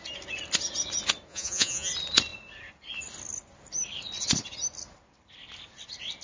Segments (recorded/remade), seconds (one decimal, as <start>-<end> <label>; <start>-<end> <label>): 0.0-1.3 recorded; 1.3-1.9 remade; 1.9-6.2 recorded